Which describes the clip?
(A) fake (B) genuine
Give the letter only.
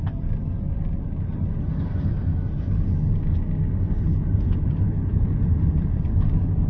B